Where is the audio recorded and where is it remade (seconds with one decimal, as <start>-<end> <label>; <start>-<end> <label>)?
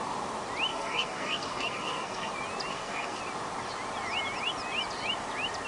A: 0.0-0.7 recorded; 0.7-2.3 remade; 2.3-2.7 recorded; 2.7-3.2 remade; 3.2-5.7 recorded